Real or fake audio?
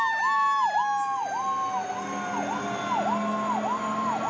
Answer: real